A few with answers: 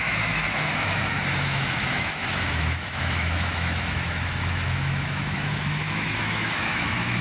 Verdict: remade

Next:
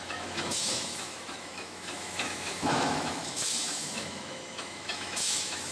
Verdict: remade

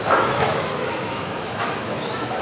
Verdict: remade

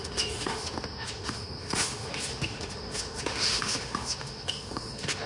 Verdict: remade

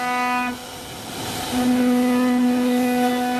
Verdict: recorded